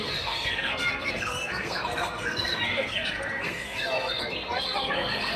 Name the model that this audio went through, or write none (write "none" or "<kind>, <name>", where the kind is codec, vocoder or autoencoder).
codec, SNAC